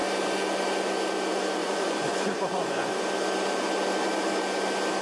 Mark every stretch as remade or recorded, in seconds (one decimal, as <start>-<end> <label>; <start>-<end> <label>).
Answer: 0.0-1.6 recorded; 1.6-3.0 remade; 3.0-5.0 recorded